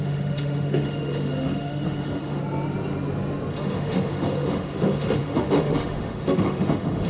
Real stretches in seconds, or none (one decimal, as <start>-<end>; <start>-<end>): 2.4-3.5